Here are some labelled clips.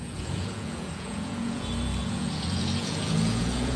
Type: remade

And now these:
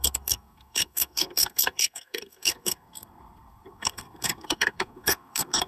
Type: remade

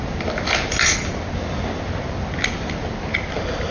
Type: recorded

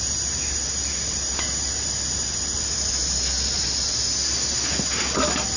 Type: recorded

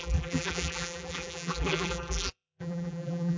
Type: remade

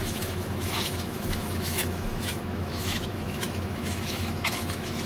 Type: remade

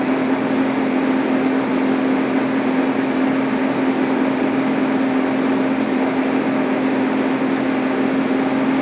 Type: recorded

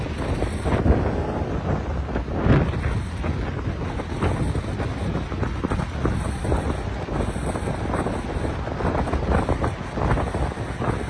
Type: recorded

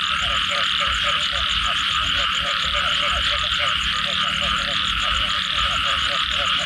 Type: recorded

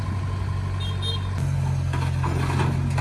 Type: recorded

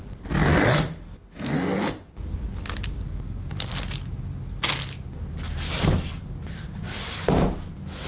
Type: recorded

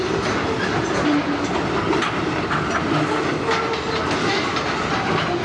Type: recorded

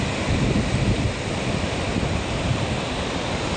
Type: remade